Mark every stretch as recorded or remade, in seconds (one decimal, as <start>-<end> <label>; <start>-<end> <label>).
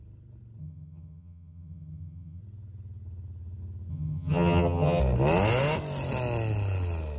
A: 0.0-0.6 recorded; 0.6-2.4 remade; 2.4-3.9 recorded; 3.9-5.0 remade; 5.0-7.2 recorded